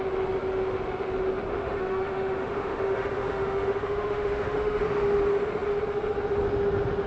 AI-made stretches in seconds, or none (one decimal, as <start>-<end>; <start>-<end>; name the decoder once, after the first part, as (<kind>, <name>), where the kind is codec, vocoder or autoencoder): 1.5-4.8 (autoencoder, DAC-VAE)